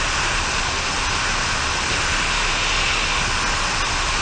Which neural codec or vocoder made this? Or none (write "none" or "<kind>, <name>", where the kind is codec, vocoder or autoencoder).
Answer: none